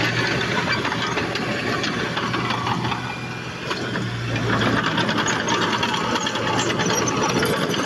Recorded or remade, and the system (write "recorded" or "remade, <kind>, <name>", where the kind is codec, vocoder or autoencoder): recorded